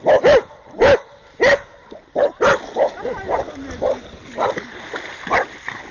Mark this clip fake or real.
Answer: real